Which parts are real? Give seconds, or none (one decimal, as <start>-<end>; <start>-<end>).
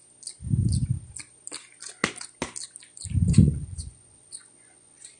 0.0-3.1